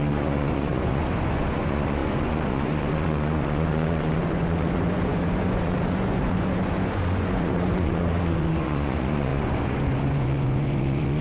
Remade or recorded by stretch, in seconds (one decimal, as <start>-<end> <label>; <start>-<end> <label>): 0.0-11.2 remade